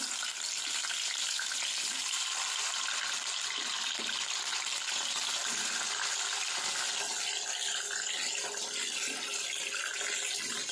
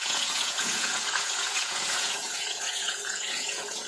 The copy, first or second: second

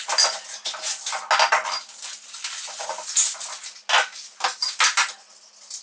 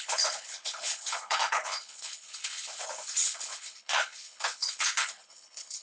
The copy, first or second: second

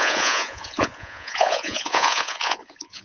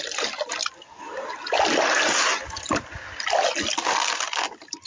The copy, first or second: first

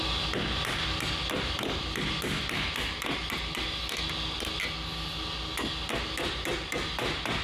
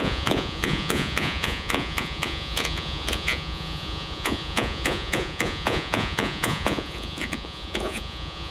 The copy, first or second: second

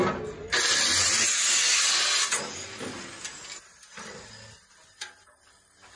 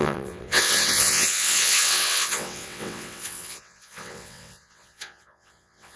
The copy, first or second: second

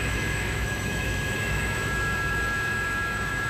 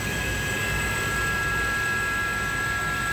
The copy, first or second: first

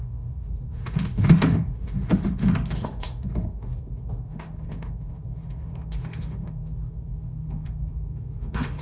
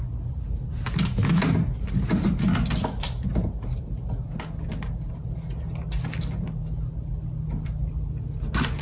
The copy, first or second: first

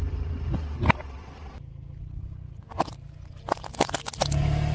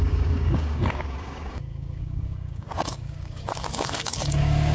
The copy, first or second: second